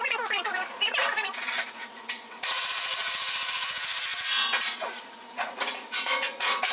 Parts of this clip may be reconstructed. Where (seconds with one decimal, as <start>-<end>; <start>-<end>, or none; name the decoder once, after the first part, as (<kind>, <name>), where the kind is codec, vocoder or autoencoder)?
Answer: 0.0-6.7 (vocoder, Vocos)